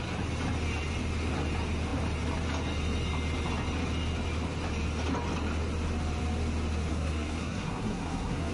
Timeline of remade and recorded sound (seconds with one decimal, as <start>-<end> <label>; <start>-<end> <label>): 0.0-6.9 recorded; 6.9-8.5 remade